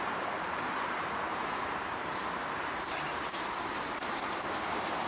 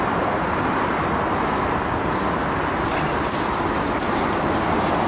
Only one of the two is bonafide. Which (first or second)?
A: second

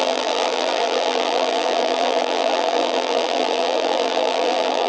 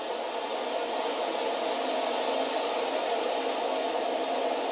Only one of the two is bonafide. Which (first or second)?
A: second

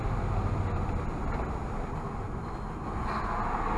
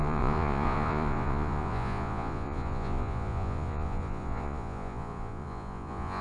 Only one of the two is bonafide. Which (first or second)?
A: first